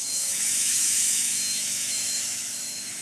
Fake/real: fake